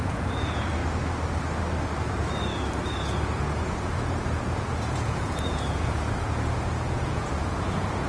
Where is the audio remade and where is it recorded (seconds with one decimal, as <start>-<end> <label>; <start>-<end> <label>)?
0.0-0.8 remade; 0.8-2.9 recorded; 2.9-8.1 remade